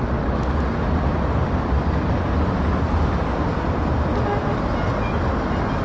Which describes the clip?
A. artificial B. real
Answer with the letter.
B